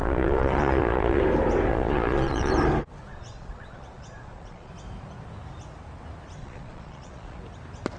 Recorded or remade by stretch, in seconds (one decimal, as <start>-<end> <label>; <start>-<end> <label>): 0.0-1.2 remade; 1.2-1.7 recorded; 1.7-2.5 remade; 2.5-3.1 recorded; 3.1-4.7 remade; 4.7-6.4 recorded; 6.4-7.4 remade; 7.4-8.0 recorded